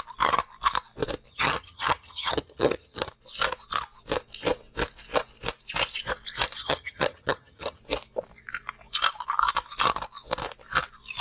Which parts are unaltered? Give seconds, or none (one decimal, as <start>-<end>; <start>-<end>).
0.0-1.3; 3.1-6.6; 7.8-11.2